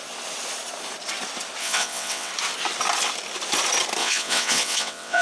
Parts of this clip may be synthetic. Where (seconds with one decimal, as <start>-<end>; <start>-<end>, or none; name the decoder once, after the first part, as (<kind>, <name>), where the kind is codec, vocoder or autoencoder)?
1.6-2.3 (vocoder, WaveNeXt); 4.0-5.2